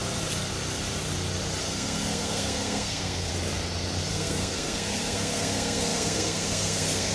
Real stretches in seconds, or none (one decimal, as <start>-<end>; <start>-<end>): 0.0-1.6; 3.3-4.1